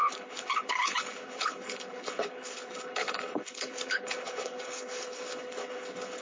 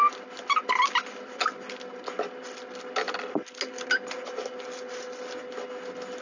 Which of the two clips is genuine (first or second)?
second